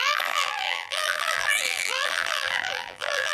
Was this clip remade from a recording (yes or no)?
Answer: yes